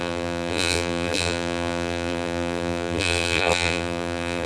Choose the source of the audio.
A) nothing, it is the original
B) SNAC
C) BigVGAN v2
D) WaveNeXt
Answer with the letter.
C